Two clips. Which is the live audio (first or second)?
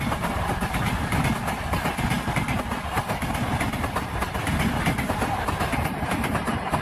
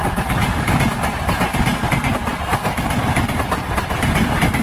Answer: second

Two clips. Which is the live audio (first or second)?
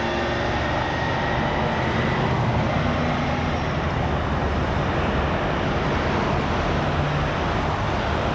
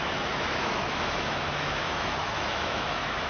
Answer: first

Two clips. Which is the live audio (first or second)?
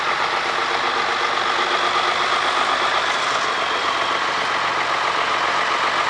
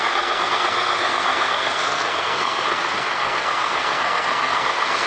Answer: first